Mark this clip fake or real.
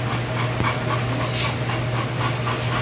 real